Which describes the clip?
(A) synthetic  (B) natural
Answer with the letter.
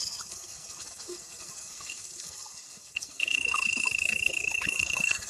A